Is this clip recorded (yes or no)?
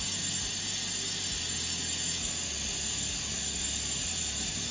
yes